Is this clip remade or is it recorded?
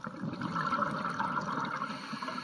recorded